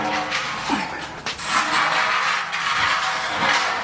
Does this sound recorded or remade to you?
recorded